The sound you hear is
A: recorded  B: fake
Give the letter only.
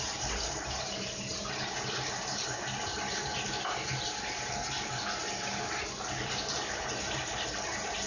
B